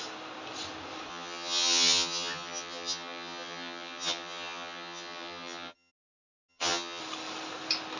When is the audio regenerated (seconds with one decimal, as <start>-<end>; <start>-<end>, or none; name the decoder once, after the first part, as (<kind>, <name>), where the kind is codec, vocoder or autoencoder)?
1.1-5.9 (vocoder, HiFi-GAN); 6.5-7.0